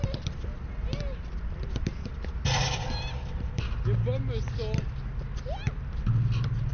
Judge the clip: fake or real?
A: real